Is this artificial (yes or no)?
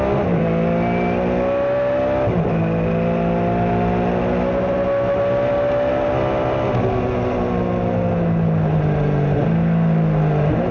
no